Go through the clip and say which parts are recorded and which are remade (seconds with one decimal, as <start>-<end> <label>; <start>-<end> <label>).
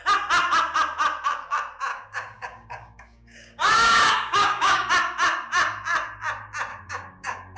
0.0-1.9 recorded; 1.9-4.9 remade; 4.9-6.7 recorded; 6.7-7.6 remade